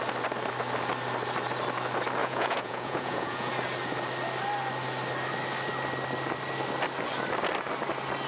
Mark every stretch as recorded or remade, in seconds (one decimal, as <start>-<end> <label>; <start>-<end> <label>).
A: 0.0-2.2 recorded; 2.2-3.5 remade; 3.5-8.3 recorded